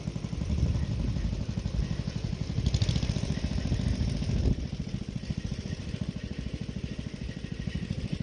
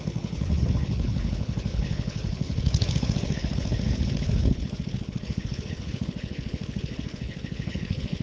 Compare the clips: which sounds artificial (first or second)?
second